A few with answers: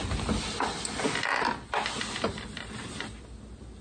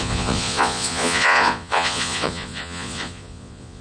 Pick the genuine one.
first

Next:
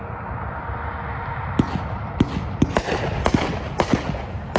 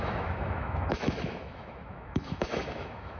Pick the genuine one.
first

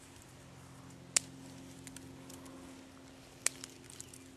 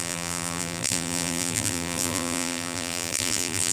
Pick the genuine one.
first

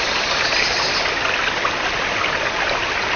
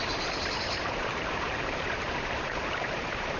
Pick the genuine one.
first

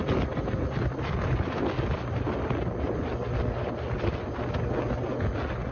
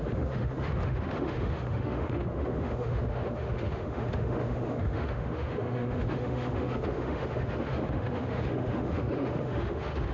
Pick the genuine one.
first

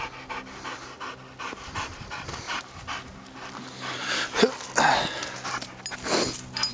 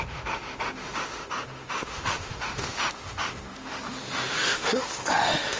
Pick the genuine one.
first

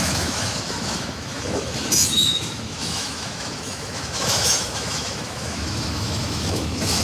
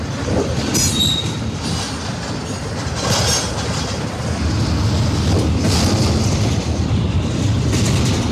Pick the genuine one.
second